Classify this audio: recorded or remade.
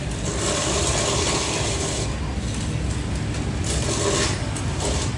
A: recorded